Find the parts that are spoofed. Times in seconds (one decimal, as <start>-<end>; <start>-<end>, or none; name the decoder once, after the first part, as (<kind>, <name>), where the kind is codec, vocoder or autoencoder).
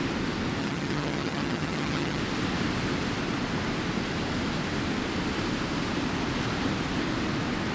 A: 0.6-2.2 (vocoder, HiFi-GAN)